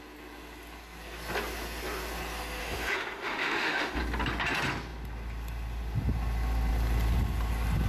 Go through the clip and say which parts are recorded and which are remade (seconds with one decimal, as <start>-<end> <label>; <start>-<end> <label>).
0.0-2.6 recorded; 2.6-4.0 remade; 4.0-7.9 recorded